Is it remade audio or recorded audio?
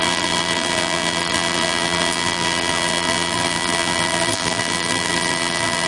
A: remade